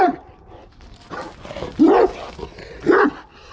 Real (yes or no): yes